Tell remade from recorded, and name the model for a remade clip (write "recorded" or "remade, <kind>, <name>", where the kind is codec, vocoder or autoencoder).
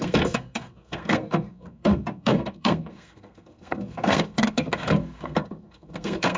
remade, codec, SNAC